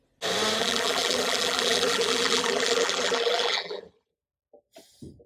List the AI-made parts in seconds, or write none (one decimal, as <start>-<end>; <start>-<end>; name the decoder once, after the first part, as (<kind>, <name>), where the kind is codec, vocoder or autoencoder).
0.6-3.8 (vocoder, BigVGAN v2)